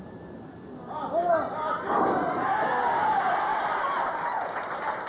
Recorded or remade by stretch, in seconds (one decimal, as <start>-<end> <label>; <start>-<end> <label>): 0.0-3.5 recorded; 3.5-4.1 remade; 4.1-5.1 recorded